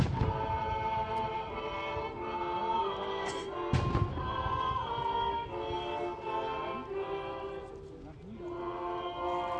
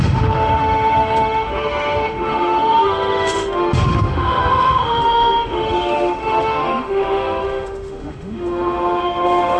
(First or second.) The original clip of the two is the first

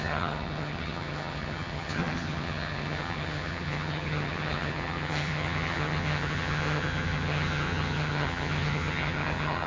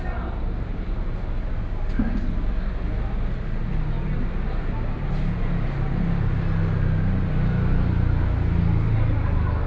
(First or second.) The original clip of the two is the second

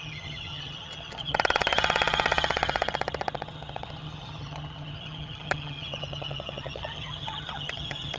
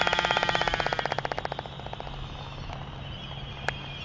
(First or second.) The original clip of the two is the second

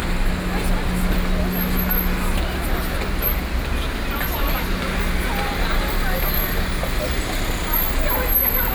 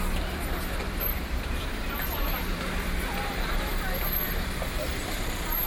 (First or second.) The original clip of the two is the first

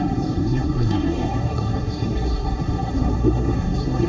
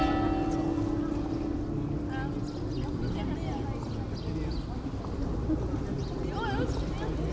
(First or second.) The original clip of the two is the second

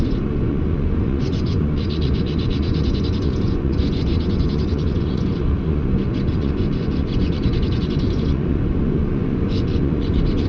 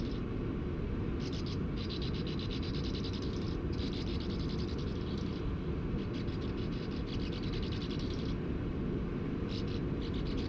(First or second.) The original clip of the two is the second